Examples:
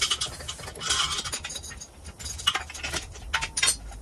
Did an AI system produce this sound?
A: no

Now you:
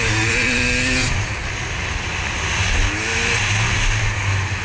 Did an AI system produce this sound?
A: no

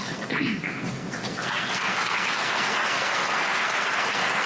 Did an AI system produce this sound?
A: yes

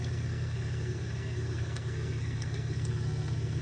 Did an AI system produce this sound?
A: yes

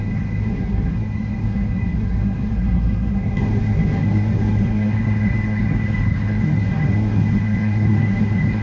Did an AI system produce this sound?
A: yes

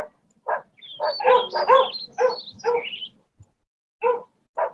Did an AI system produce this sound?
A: no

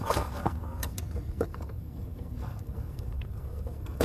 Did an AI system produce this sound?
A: yes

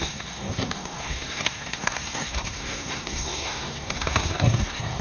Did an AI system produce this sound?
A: yes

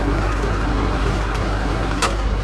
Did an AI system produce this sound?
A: yes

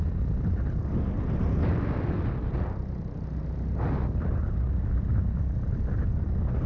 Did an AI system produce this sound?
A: no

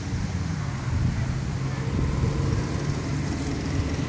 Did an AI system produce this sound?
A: no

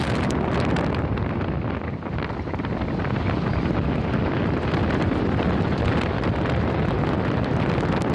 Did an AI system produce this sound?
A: no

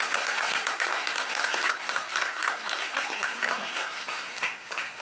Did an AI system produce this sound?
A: yes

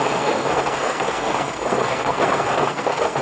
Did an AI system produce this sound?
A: yes